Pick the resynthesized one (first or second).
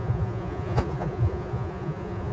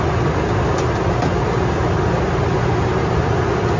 first